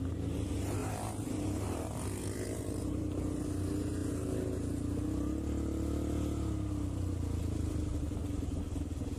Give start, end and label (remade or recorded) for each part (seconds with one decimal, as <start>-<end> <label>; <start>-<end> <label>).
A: 0.0-0.8 recorded; 0.8-3.0 remade; 3.0-9.2 recorded